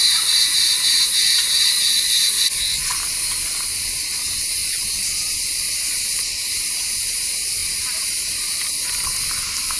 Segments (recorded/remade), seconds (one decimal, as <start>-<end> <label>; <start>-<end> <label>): 0.0-1.2 recorded; 1.2-2.6 remade; 2.6-4.6 recorded; 4.6-6.0 remade; 6.0-9.8 recorded